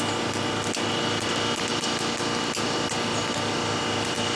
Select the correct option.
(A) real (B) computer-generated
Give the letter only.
A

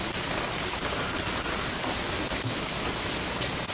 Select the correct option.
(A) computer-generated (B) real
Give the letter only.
B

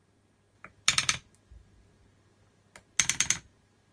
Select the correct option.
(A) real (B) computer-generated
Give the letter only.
A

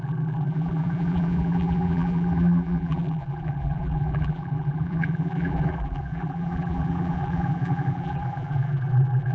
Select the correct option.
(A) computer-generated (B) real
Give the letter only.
A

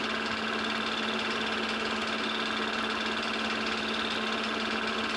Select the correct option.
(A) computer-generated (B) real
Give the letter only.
B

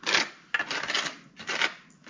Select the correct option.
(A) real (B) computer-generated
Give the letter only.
A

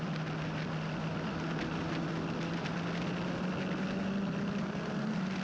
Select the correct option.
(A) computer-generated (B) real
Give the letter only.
B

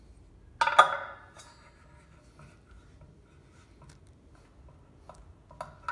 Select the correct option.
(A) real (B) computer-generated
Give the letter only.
A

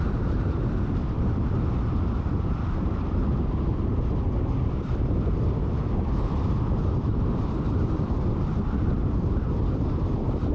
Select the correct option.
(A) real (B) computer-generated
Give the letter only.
B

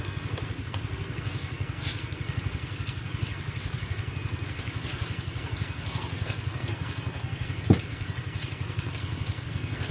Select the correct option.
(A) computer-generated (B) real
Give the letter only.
A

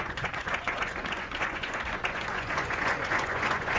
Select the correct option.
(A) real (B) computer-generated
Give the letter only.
B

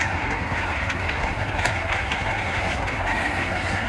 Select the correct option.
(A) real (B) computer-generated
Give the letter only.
B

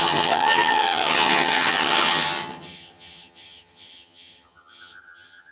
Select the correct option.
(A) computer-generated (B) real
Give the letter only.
A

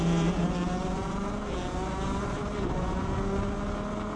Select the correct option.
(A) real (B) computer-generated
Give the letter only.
A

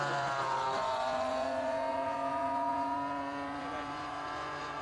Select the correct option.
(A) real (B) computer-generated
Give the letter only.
B